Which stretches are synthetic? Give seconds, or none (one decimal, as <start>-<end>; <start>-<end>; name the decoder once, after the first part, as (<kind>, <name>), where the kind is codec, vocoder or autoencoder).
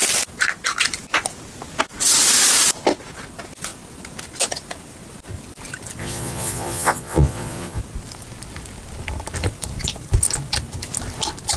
6.0-7.8 (vocoder, Vocos)